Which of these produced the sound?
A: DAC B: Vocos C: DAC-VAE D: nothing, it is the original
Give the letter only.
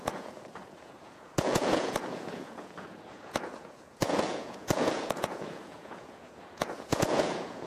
B